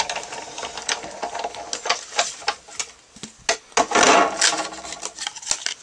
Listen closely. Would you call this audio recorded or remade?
recorded